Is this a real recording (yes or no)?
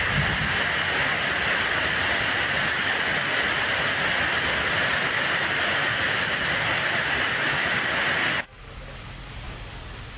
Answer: yes